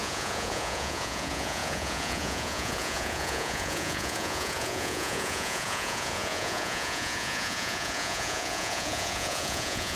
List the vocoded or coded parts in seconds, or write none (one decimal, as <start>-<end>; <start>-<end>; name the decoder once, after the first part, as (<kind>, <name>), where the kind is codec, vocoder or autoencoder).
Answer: 0.0-10.0 (vocoder, Vocos)